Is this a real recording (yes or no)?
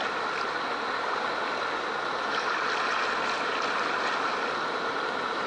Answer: yes